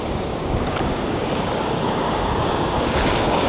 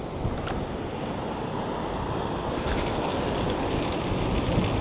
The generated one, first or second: first